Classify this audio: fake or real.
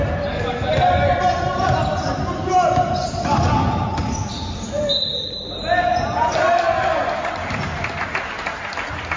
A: real